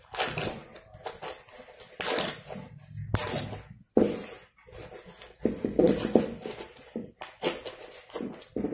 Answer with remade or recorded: recorded